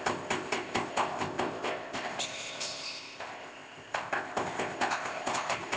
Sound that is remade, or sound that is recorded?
remade